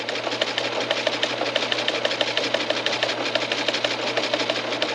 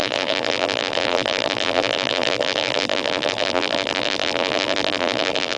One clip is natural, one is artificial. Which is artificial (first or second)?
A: second